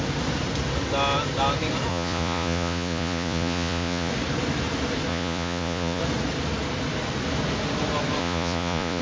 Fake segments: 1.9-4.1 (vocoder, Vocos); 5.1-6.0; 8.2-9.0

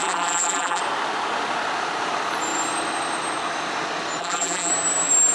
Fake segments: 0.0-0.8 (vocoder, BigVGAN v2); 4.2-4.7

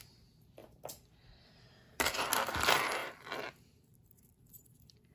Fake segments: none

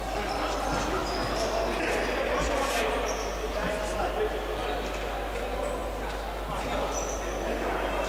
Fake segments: none